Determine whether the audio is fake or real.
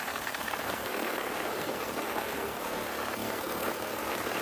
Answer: fake